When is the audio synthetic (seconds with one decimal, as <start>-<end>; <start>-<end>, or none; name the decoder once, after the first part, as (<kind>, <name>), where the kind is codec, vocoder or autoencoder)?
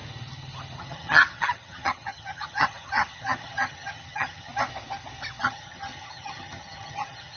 0.8-4.5 (vocoder, HiFi-GAN); 5.4-7.4